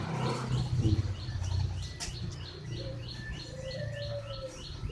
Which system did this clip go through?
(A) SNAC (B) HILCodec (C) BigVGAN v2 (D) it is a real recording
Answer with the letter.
D